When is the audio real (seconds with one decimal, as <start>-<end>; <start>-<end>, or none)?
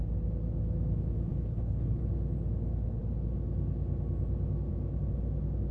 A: 0.0-1.3; 2.0-5.7